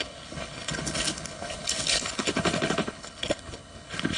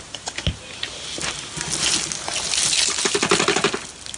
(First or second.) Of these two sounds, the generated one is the first